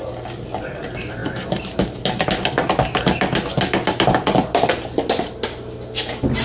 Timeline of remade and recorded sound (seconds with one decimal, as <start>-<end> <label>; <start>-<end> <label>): 0.0-1.2 recorded; 1.2-2.0 remade; 2.0-6.4 recorded